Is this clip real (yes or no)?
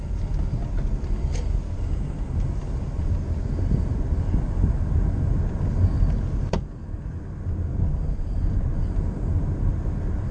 yes